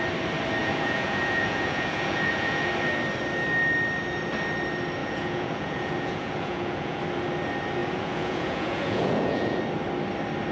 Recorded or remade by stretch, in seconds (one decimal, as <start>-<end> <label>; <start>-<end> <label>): 0.0-0.6 recorded; 0.6-2.7 remade; 2.7-5.0 recorded; 5.0-7.0 remade; 7.0-7.8 recorded; 7.8-9.6 remade; 9.6-10.5 recorded